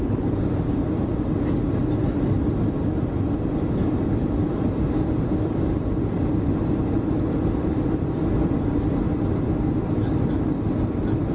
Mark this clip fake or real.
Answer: fake